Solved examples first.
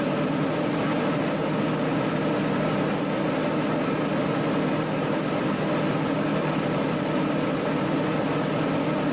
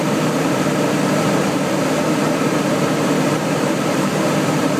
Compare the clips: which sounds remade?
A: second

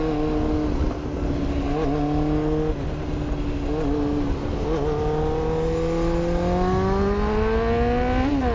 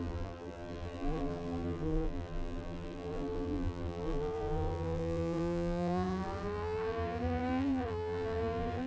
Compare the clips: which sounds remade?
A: second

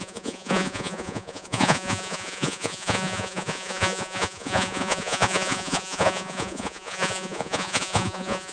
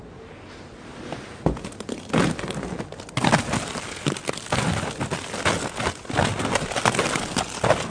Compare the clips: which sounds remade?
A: first